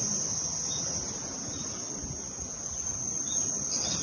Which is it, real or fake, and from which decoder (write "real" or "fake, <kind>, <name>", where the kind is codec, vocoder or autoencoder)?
real